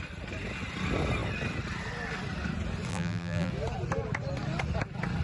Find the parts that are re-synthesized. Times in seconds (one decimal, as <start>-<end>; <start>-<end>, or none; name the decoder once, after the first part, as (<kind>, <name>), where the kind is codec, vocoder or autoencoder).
2.9-3.5 (vocoder, BigVGAN v2)